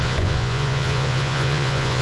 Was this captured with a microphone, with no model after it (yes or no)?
no